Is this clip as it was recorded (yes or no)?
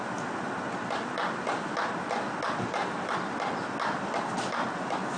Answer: yes